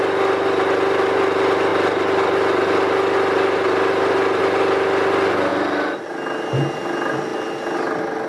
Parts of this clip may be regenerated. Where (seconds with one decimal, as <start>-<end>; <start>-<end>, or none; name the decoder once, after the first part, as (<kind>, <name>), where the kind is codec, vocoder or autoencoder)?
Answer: none